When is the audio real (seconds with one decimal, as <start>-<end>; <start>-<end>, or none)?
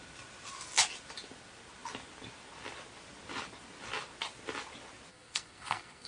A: 0.0-5.1